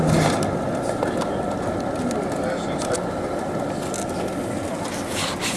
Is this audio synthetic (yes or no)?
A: no